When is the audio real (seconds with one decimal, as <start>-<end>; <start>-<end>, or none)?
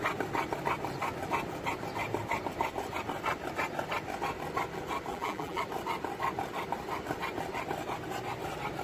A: 0.0-5.1; 5.6-8.8